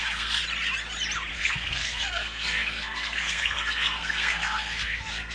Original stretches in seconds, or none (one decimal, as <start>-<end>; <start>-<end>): 0.4-1.3